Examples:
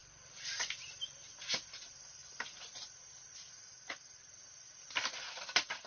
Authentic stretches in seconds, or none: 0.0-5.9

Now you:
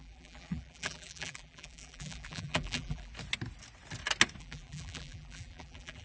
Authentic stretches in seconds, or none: 3.1-4.4

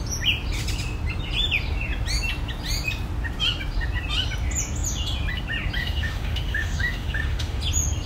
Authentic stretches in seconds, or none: 0.0-5.8; 7.6-8.1

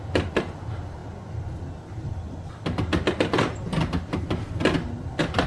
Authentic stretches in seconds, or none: 0.0-5.5